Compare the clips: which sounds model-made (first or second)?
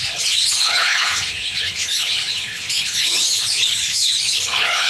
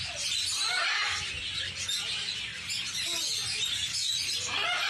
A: first